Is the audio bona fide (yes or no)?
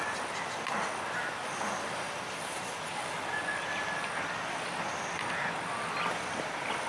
yes